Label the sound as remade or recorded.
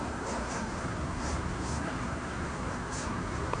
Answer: remade